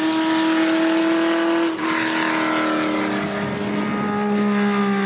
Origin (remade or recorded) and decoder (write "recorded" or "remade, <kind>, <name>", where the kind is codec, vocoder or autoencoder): recorded